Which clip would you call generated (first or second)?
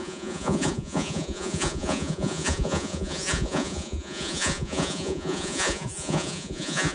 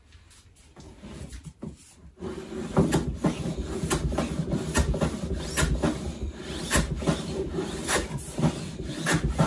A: first